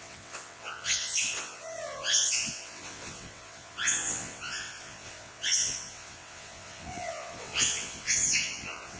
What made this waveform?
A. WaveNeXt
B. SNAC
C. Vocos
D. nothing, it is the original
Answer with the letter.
A